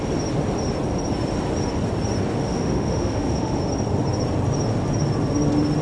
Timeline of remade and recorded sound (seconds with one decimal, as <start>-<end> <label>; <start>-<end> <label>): 0.0-2.4 recorded; 2.4-3.6 remade; 3.6-5.8 recorded